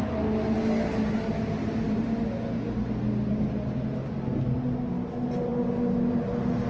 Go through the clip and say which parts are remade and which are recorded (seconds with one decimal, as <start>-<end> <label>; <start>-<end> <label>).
0.0-6.7 recorded